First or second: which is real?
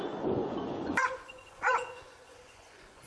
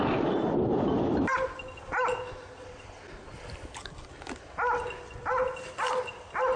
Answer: second